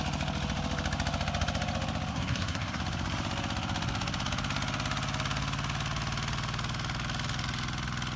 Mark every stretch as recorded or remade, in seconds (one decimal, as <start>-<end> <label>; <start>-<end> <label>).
0.0-2.1 recorded; 2.1-2.8 remade; 2.8-8.2 recorded